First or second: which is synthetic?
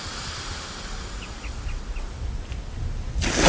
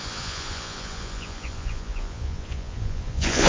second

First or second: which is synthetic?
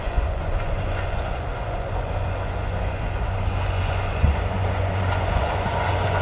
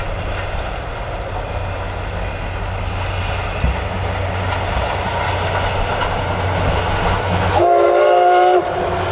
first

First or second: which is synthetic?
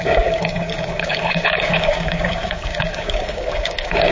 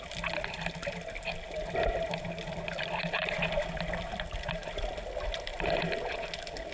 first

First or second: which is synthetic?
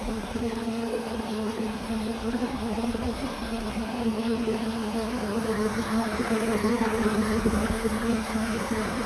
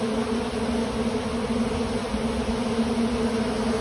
first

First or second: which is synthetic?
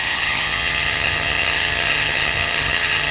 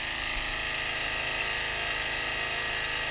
first